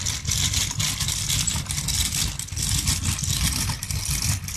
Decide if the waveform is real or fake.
real